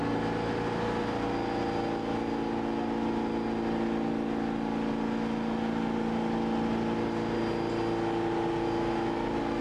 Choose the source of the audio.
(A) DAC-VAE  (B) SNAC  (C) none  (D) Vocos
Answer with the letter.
C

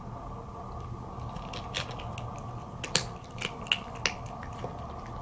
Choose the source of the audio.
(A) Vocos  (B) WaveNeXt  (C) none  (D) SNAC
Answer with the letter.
C